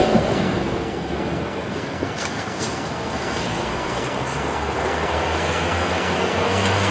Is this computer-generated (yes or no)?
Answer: yes